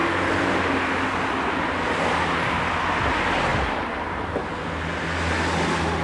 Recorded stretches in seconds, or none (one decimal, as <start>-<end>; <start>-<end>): 0.0-3.5; 4.4-6.0